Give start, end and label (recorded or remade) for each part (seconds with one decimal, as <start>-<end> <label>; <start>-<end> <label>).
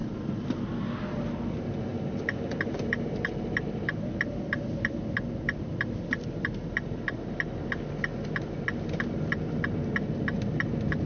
0.0-1.9 recorded; 1.9-7.0 remade; 7.0-11.1 recorded